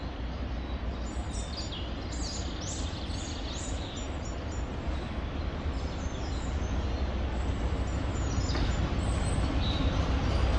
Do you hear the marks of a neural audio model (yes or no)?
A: no